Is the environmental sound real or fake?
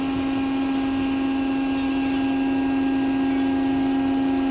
real